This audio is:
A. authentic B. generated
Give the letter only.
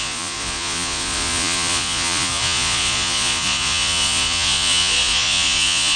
B